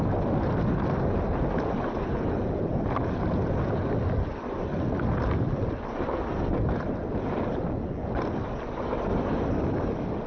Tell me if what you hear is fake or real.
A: real